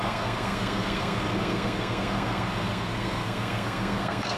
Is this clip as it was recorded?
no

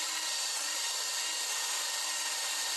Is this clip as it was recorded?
yes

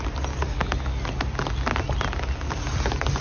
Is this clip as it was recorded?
yes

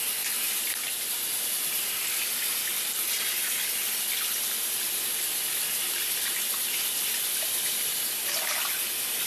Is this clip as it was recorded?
yes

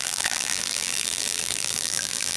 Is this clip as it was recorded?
no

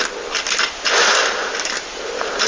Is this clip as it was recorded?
no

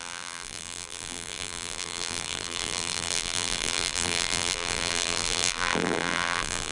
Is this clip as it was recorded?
no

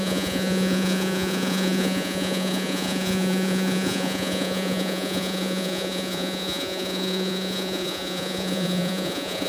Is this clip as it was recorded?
no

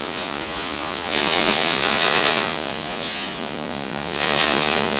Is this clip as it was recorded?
no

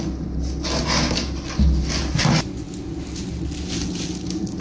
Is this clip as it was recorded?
yes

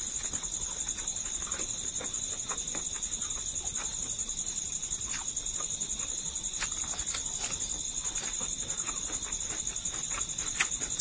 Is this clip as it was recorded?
yes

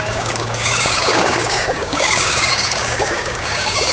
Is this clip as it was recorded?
no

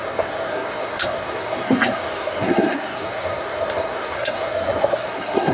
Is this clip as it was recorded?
no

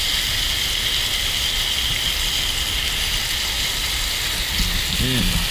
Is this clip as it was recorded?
yes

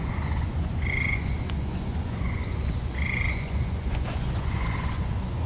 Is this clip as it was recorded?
no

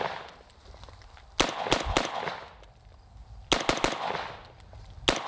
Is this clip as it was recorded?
yes